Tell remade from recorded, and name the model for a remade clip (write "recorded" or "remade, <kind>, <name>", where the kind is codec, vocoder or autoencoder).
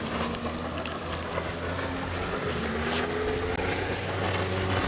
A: recorded